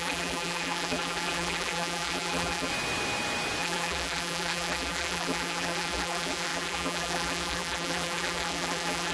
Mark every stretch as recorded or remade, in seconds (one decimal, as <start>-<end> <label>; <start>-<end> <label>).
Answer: 0.0-2.7 remade; 2.7-3.6 recorded; 3.6-9.1 remade